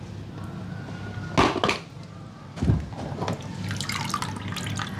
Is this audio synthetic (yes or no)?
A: no